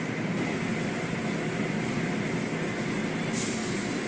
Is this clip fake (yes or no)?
no